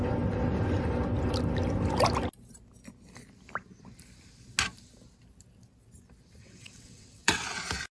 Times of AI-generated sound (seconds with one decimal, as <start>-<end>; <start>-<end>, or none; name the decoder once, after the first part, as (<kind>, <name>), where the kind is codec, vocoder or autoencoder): 6.4-7.4 (vocoder, WaveNeXt)